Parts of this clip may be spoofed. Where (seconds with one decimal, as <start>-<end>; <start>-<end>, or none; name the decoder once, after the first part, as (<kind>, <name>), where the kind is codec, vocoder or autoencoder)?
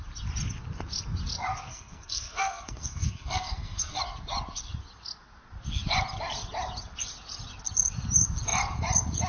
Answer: 1.7-4.0 (codec, SNAC)